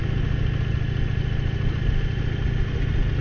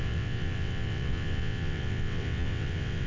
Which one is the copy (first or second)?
second